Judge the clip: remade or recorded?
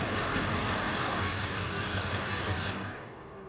remade